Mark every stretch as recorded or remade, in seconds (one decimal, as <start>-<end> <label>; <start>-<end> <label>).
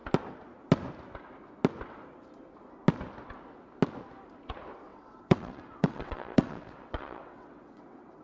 0.0-4.9 recorded; 4.9-8.2 remade